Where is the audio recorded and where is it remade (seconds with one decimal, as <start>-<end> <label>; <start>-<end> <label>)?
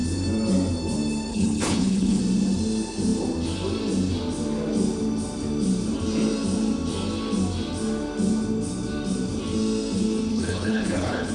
0.0-1.3 recorded; 1.3-2.2 remade; 2.2-10.3 recorded; 10.3-11.3 remade